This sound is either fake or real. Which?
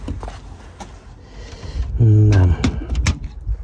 real